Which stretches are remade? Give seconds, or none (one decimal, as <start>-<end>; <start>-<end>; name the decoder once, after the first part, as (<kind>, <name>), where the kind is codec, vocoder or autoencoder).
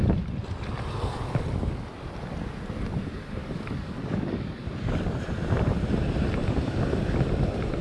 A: 3.4-4.7 (codec, DAC)